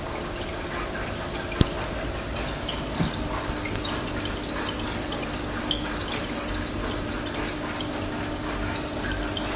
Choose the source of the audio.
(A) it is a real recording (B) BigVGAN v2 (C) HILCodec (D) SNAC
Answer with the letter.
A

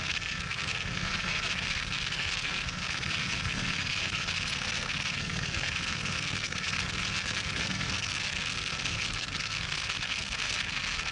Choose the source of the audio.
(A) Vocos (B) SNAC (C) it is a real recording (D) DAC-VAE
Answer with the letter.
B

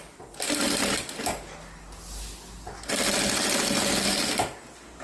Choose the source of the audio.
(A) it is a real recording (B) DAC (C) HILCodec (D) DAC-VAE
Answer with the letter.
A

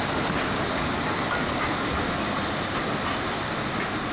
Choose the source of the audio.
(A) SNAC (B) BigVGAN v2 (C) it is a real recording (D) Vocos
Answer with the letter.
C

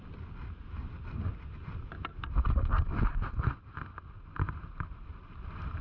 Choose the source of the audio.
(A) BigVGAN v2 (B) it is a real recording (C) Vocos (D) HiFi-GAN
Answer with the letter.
B